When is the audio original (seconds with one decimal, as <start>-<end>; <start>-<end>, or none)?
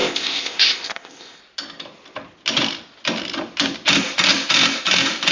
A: 1.4-5.3